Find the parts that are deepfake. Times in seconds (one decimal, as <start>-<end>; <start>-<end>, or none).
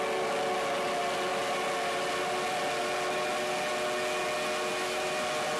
none